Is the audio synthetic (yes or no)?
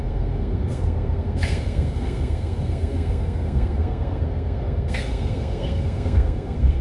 yes